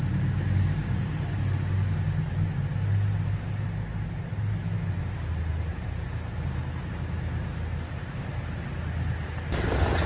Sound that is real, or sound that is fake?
real